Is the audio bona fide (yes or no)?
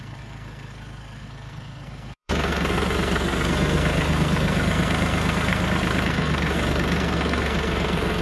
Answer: no